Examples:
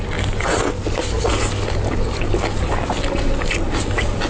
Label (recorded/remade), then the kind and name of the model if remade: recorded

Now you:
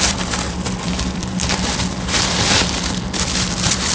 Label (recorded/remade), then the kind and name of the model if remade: remade, vocoder, BigVGAN v2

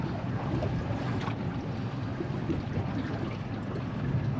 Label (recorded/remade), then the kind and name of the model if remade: remade, vocoder, BigVGAN v2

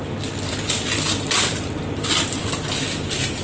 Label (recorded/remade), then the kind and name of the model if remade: recorded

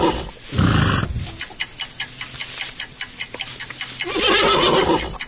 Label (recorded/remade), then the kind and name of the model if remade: recorded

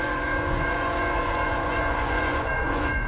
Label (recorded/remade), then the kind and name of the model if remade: remade, vocoder, Vocos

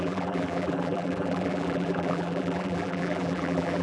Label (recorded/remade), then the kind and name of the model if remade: remade, vocoder, BigVGAN v2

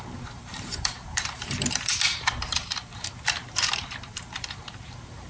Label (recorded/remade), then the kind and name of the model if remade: remade, vocoder, BigVGAN v2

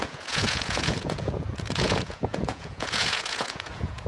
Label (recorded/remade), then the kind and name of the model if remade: remade, vocoder, Vocos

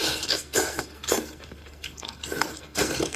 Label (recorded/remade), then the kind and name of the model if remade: remade, codec, SNAC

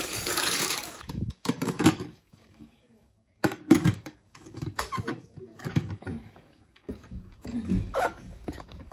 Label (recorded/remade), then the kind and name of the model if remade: remade, codec, DAC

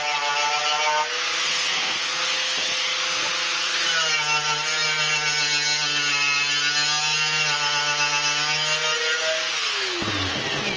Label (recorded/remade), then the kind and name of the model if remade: recorded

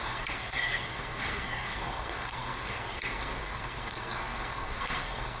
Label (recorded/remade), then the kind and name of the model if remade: remade, codec, SNAC